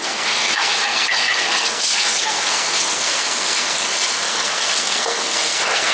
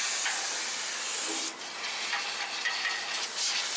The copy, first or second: first